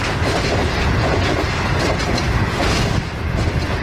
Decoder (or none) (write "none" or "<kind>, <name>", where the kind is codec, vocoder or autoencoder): none